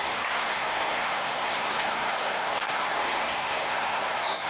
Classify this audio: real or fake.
fake